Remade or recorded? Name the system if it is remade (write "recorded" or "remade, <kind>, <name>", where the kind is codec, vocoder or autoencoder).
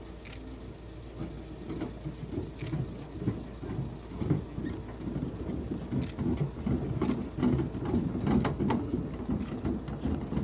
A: recorded